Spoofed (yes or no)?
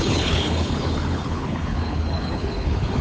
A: yes